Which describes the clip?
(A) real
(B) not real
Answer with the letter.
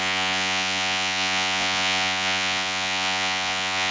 B